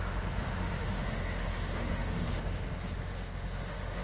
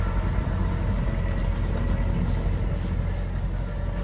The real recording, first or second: second